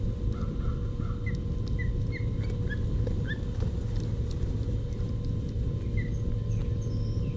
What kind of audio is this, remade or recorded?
recorded